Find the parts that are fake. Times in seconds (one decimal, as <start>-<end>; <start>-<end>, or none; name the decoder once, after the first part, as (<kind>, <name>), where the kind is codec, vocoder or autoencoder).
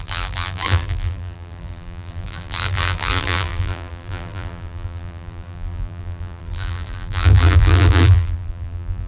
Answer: 0.0-9.1 (vocoder, BigVGAN v2)